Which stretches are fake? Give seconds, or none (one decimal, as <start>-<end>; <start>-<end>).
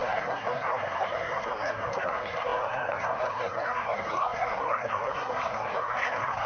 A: 0.0-6.5